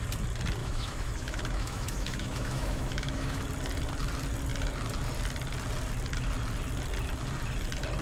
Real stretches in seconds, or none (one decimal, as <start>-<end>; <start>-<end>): 0.0-0.6; 3.4-8.0